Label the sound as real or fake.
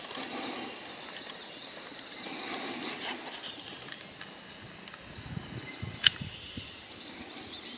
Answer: real